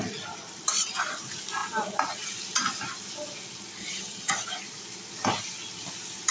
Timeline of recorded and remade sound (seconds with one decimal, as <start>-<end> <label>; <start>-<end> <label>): 0.0-3.8 recorded; 3.8-4.3 remade; 4.3-6.3 recorded